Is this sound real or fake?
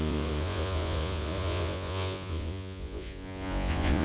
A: fake